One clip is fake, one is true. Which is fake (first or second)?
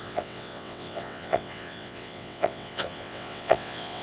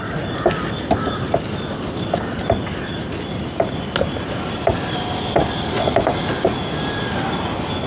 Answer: first